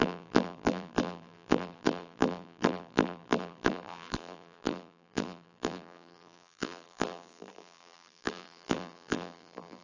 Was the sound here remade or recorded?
remade